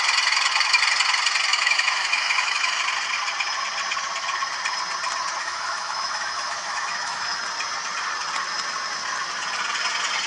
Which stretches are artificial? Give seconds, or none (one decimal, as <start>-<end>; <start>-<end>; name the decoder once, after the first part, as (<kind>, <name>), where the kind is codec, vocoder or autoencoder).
1.5-2.8 (autoencoder, DAC-VAE); 5.4-7.4